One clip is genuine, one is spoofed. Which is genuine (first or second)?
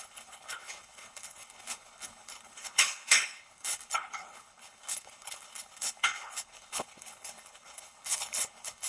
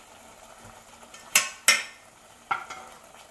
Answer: second